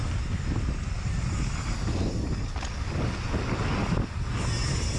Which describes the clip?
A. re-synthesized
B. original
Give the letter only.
B